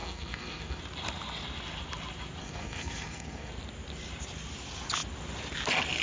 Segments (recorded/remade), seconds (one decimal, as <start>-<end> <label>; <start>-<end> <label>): 0.0-0.8 remade; 0.8-2.4 recorded; 2.4-3.5 remade; 3.5-6.0 recorded